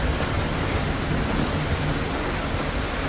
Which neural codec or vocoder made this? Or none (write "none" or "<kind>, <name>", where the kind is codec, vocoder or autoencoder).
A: none